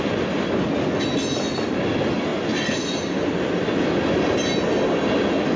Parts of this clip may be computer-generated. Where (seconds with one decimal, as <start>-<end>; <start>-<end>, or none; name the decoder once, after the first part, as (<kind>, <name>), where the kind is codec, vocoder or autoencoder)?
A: none